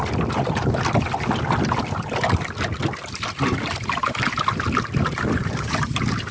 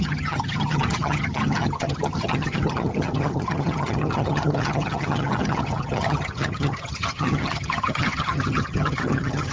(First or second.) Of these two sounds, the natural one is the first